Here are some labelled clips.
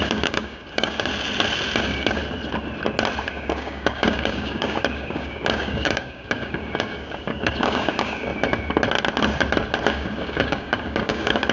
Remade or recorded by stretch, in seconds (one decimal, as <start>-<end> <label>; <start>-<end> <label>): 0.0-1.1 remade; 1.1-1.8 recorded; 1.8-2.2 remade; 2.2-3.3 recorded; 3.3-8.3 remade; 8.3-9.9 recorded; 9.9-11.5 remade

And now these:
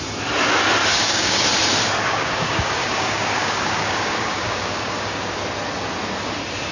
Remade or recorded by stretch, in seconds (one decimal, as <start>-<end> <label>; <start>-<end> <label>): 0.0-0.8 recorded; 0.8-1.5 remade; 1.5-2.0 recorded; 2.0-5.4 remade; 5.4-6.7 recorded

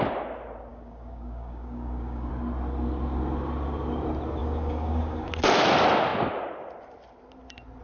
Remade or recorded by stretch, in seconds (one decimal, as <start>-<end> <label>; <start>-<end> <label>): 0.0-0.7 recorded; 0.7-2.3 remade; 2.3-4.4 recorded; 4.4-5.3 remade; 5.3-7.8 recorded

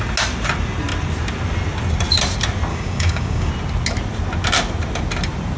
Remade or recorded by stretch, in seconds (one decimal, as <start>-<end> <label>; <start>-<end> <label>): 0.0-2.7 recorded; 2.7-3.5 remade; 3.5-5.6 recorded

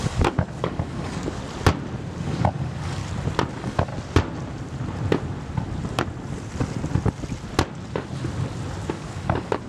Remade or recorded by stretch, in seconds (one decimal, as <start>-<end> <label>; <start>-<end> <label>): 0.0-1.4 remade; 1.4-2.2 recorded; 2.2-3.0 remade; 3.0-3.5 recorded; 3.5-3.9 remade; 3.9-8.9 recorded; 8.9-9.7 remade

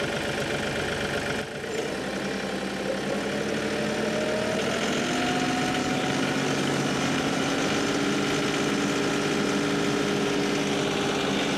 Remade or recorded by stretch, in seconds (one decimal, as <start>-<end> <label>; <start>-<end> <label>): 0.0-5.8 recorded; 5.8-7.4 remade; 7.4-11.6 recorded

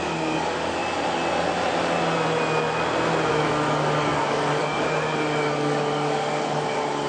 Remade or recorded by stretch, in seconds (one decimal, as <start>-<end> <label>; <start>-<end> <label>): 0.0-0.8 remade; 0.8-3.3 recorded; 3.3-7.1 remade